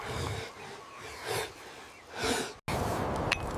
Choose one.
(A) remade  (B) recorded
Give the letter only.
B